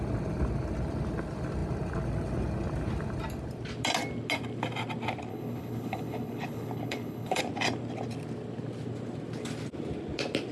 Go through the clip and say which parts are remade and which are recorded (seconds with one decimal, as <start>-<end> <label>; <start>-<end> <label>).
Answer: 0.0-5.3 recorded; 5.3-7.4 remade; 7.4-10.5 recorded